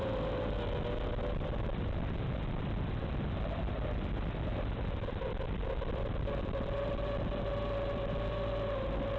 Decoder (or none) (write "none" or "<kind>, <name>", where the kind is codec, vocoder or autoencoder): none